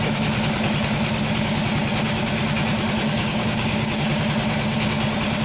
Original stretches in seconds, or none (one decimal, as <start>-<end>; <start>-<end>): 0.0-3.2; 4.2-5.4